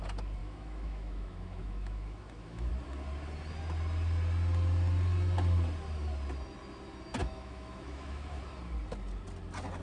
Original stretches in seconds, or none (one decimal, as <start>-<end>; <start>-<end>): 0.0-0.4; 2.7-7.2; 8.4-9.8